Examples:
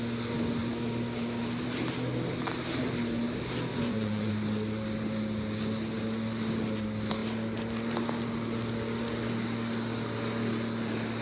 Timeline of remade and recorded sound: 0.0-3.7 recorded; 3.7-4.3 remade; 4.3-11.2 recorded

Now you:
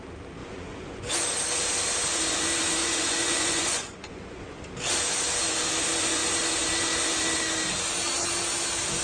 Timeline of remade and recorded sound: 0.0-0.4 recorded; 0.4-1.1 remade; 1.1-2.8 recorded; 2.8-4.6 remade; 4.6-9.0 recorded

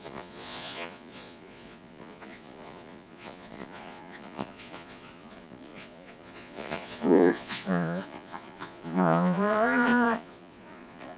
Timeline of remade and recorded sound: 0.0-11.2 remade

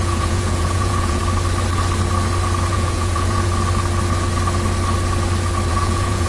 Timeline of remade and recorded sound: 0.0-1.2 remade; 1.2-2.7 recorded; 2.7-3.5 remade; 3.5-5.7 recorded; 5.7-6.3 remade

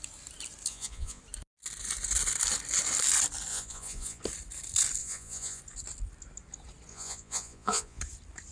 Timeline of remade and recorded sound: 0.0-0.7 recorded; 0.7-1.2 remade; 1.2-3.5 recorded; 3.5-4.2 remade; 4.2-5.0 recorded; 5.0-5.6 remade; 5.6-6.9 recorded; 6.9-8.0 remade; 8.0-8.5 recorded